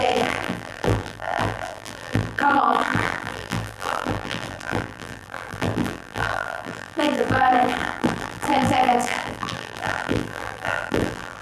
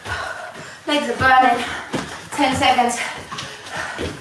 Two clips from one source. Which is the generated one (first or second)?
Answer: first